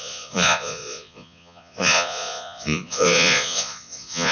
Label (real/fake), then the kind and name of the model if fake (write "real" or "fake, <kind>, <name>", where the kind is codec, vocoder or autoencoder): fake, vocoder, Vocos